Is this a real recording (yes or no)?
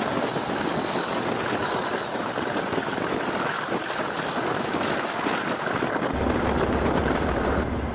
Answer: yes